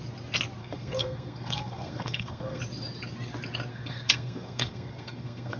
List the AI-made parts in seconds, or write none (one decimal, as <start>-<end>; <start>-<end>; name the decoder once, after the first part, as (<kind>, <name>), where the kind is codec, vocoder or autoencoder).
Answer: 0.6-2.6 (codec, SNAC); 3.7-5.6